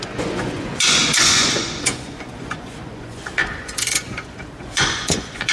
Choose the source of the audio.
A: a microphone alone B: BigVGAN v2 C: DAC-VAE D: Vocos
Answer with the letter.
D